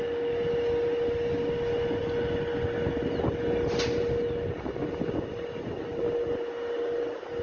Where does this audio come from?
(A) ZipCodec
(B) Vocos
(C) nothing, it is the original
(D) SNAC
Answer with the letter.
C